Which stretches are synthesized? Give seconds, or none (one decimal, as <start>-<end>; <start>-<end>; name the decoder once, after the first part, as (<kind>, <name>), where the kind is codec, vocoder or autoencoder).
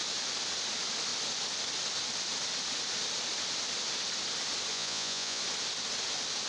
4.7-5.4 (vocoder, Vocos)